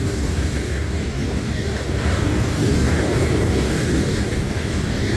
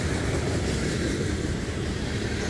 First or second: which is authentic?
second